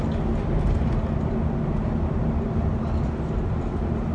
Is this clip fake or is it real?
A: real